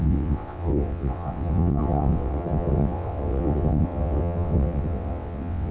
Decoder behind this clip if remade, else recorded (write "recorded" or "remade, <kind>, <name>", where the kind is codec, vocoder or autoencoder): remade, vocoder, WaveNeXt